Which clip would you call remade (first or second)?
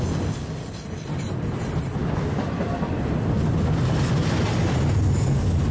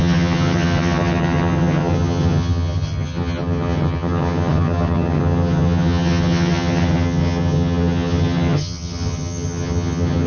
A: second